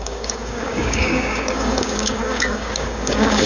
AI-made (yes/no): yes